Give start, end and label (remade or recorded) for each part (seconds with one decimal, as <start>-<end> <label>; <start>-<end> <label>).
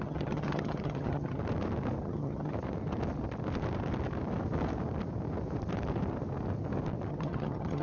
0.0-1.4 remade; 1.4-2.0 recorded; 2.0-2.5 remade; 2.5-7.1 recorded; 7.1-7.8 remade